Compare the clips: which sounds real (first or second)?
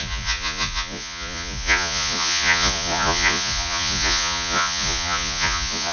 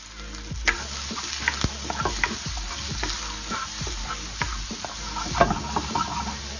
second